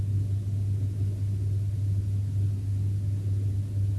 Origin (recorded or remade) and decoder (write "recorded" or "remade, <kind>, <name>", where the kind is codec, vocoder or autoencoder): recorded